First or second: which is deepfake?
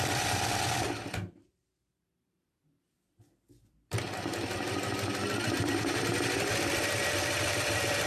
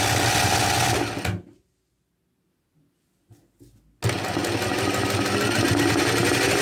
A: first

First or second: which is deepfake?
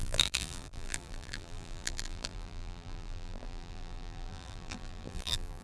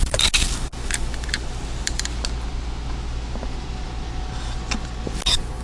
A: first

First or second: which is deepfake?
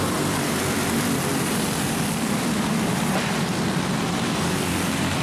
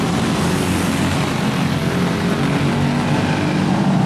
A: first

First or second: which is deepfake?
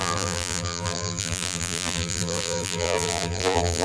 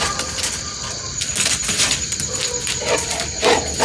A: first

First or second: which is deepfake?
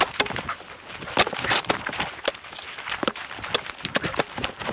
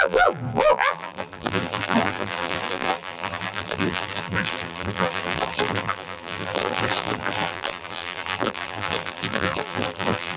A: second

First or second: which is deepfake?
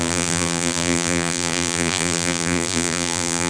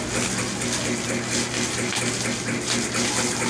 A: first